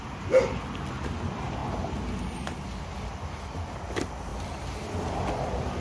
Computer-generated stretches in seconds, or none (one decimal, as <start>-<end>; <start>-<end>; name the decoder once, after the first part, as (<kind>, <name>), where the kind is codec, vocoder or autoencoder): none